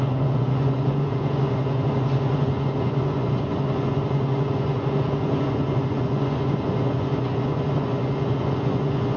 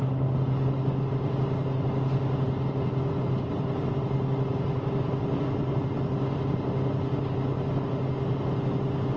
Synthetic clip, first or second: first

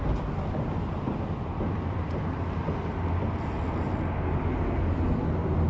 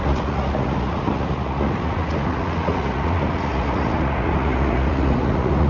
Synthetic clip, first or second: second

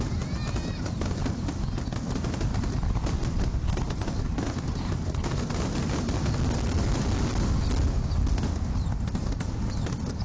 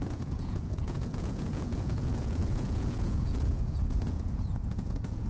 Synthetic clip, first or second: second